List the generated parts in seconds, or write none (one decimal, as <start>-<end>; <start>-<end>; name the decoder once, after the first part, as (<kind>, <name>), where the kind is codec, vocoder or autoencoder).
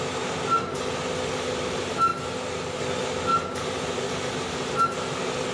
3.3-4.1 (vocoder, BigVGAN v2)